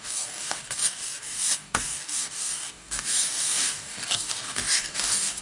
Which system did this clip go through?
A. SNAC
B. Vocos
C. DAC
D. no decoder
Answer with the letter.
C